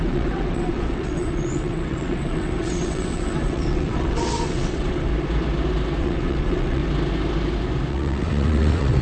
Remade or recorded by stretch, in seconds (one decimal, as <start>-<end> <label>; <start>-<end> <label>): 0.0-5.1 remade; 5.1-6.0 recorded; 6.0-6.8 remade; 6.8-7.9 recorded; 7.9-9.0 remade